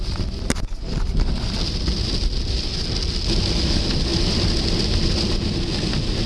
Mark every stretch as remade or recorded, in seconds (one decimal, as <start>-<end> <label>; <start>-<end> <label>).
0.0-6.3 recorded